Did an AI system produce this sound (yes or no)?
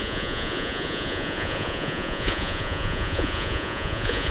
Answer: yes